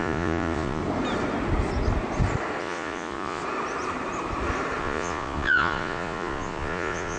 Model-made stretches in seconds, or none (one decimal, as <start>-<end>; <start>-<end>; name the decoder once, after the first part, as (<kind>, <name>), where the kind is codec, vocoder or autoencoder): 0.0-0.8 (vocoder, Vocos); 2.6-3.4; 4.8-7.2